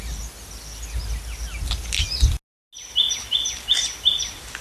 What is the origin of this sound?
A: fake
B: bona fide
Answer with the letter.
B